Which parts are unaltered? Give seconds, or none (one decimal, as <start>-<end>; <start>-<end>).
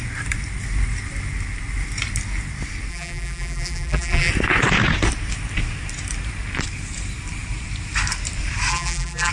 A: 0.0-2.9; 4.3-8.7